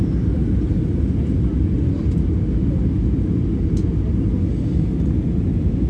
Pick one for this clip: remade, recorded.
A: recorded